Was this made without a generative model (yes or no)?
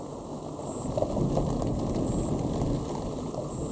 yes